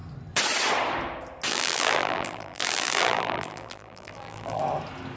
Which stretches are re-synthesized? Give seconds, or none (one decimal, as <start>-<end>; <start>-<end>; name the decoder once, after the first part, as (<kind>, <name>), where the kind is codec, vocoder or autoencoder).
1.5-4.6 (vocoder, BigVGAN v2)